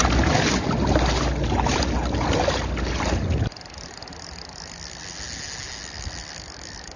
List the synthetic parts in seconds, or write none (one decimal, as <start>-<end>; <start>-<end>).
none